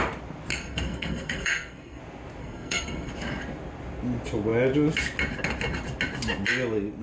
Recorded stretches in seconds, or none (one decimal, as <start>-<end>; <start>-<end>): 0.0-0.5; 2.0-2.4; 3.1-7.0